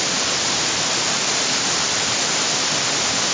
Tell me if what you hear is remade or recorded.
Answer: recorded